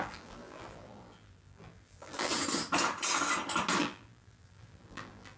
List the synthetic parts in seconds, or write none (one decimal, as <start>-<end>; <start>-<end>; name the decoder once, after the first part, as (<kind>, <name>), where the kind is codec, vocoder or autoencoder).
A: 0.0-2.3 (vocoder, BigVGAN v2); 3.8-5.4